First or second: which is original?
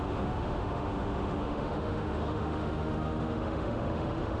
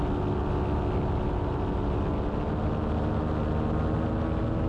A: second